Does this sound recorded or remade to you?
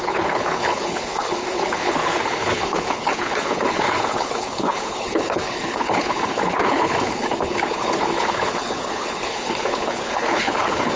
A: remade